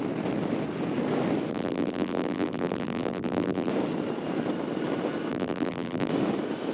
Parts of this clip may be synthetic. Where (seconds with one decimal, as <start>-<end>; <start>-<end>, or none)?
1.5-3.7; 5.3-6.1